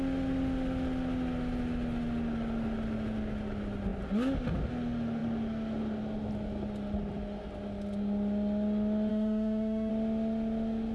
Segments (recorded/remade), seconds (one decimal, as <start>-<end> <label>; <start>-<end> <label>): 0.0-9.1 recorded; 9.1-9.9 remade; 9.9-10.9 recorded